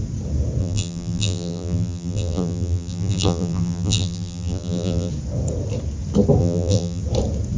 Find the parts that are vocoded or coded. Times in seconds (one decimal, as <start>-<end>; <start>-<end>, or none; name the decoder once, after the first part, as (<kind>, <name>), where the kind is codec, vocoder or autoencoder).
0.6-5.1 (vocoder, BigVGAN v2); 6.4-7.0